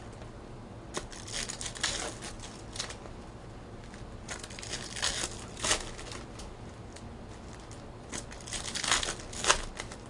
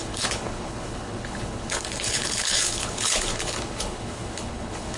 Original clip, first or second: first